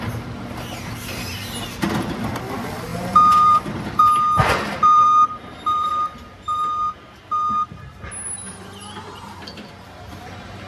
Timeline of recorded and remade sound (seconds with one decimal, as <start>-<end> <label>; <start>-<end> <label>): 0.0-2.9 recorded; 2.9-5.9 remade; 5.9-10.7 recorded